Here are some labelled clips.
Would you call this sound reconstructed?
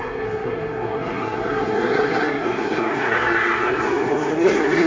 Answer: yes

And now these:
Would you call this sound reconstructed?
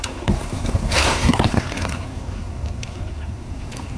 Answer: yes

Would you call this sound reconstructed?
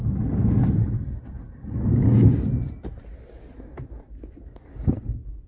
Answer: no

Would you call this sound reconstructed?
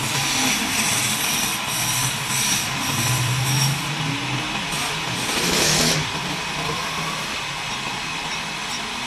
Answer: no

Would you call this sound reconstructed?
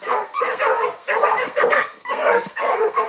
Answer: yes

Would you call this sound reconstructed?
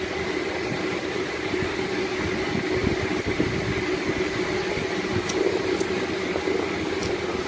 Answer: no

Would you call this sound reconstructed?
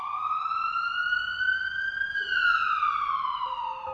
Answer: no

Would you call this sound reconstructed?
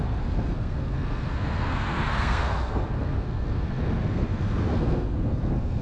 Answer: yes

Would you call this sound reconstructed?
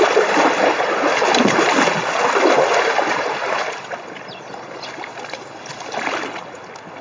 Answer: no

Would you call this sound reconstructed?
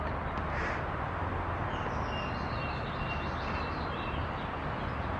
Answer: no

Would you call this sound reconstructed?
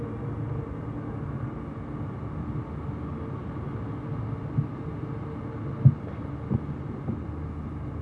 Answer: no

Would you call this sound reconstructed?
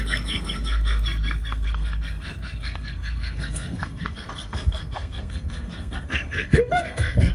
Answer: yes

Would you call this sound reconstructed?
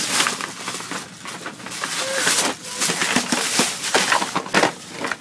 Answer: no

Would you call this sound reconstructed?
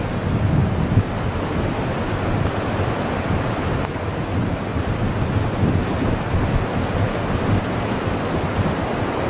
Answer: no